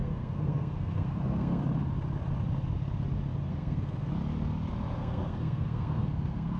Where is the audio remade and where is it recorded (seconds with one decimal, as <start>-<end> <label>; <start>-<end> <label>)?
0.0-1.6 remade; 1.6-3.5 recorded; 3.5-4.1 remade; 4.1-5.0 recorded; 5.0-6.6 remade